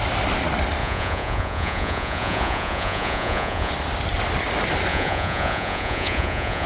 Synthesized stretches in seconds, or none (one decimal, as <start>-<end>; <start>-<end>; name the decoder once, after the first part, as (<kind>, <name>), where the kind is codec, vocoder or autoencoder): 0.8-3.7 (vocoder, Vocos); 4.9-6.7